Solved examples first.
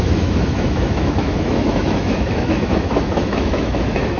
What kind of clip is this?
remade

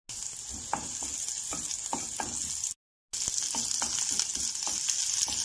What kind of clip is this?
recorded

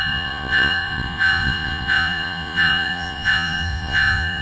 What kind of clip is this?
remade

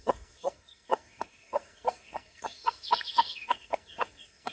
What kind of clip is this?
remade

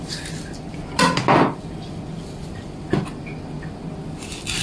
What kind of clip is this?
recorded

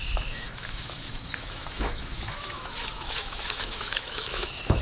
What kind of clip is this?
remade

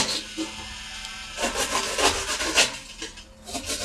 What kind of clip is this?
recorded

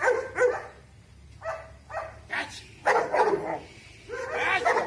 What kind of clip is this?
recorded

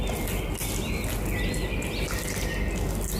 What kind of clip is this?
recorded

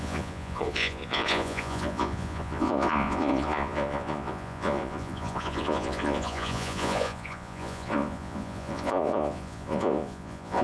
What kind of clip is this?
remade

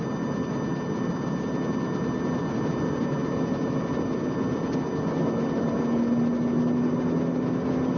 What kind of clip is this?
recorded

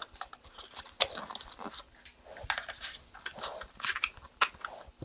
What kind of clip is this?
recorded